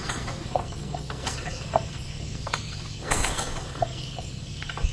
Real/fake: fake